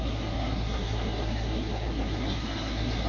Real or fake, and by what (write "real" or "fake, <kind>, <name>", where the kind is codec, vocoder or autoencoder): fake, codec, SNAC